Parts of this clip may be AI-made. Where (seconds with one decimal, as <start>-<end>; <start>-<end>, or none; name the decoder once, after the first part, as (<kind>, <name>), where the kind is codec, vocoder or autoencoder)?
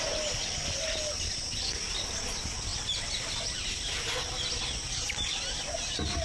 none